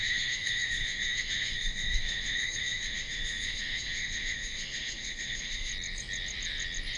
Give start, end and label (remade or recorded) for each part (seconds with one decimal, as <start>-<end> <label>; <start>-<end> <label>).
0.0-5.7 remade; 5.7-7.0 recorded